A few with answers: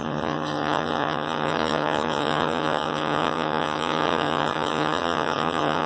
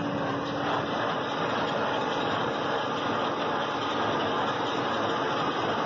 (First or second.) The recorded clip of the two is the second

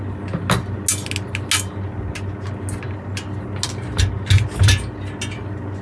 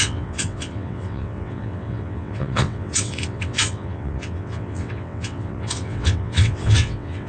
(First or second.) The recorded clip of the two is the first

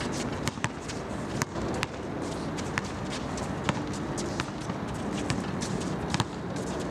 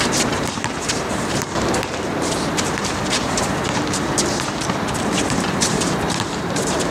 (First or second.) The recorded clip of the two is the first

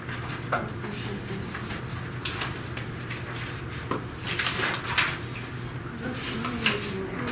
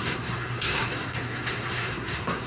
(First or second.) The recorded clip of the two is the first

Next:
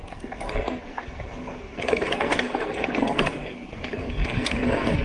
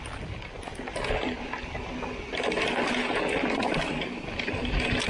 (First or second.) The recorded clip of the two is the second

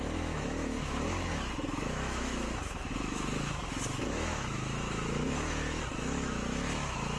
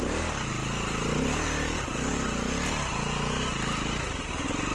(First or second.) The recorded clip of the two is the second